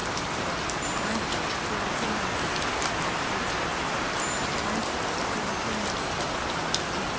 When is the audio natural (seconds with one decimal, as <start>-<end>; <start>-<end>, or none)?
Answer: 0.0-3.7; 4.2-7.2